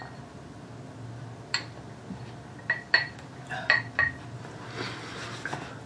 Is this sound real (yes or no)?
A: yes